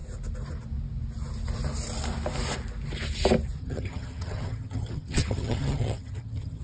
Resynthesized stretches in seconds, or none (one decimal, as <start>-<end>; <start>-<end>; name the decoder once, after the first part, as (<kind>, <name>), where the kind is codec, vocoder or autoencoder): 3.6-6.6 (vocoder, HiFi-GAN)